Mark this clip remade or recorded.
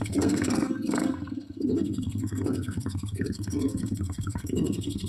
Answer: remade